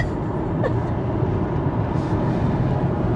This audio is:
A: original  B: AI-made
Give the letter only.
A